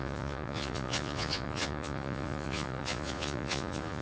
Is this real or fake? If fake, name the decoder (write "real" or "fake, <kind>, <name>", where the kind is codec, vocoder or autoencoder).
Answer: fake, vocoder, Vocos